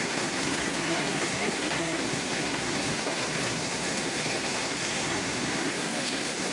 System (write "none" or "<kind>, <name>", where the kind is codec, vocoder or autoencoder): codec, SNAC